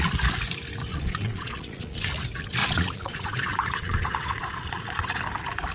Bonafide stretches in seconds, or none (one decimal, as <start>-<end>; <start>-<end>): 0.0-0.9; 2.1-2.6; 5.2-5.7